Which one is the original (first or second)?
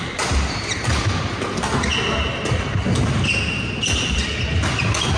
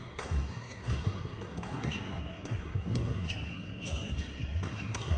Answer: first